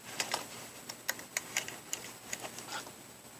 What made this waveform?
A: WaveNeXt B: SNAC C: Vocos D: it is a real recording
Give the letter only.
D